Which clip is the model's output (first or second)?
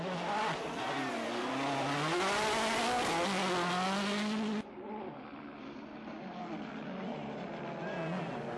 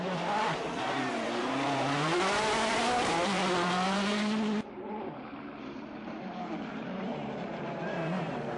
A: second